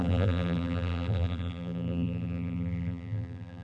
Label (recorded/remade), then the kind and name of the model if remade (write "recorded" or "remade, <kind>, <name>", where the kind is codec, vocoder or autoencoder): remade, vocoder, BigVGAN v2